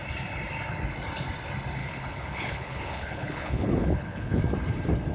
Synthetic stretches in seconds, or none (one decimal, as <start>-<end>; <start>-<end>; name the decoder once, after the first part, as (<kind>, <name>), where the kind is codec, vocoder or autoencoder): 1.8-4.4 (codec, HILCodec)